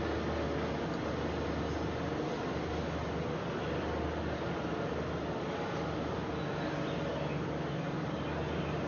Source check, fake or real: real